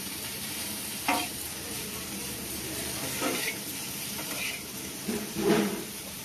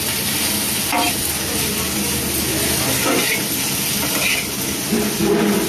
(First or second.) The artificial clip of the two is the first